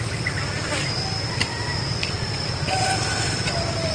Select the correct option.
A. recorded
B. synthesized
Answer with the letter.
A